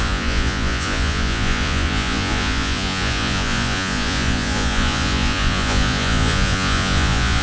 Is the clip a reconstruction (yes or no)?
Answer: yes